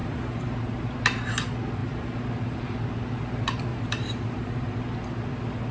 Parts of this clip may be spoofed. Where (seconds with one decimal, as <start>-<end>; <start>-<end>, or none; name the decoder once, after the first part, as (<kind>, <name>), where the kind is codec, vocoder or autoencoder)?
0.0-0.6 (vocoder, BigVGAN v2); 1.8-2.6; 3.7-4.8